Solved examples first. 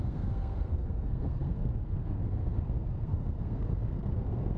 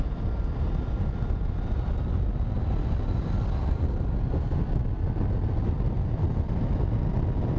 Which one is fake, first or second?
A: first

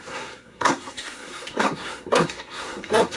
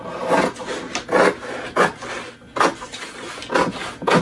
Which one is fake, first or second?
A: first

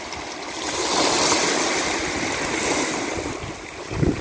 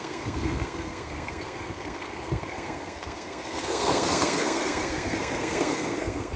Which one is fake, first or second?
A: second